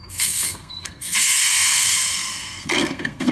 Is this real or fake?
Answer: fake